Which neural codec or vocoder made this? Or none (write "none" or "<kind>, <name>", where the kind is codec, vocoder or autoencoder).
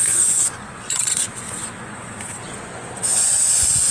vocoder, Vocos